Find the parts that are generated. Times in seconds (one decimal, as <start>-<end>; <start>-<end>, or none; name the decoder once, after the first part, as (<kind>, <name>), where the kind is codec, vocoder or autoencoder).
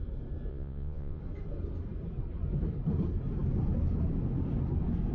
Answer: 0.5-1.2 (vocoder, Vocos)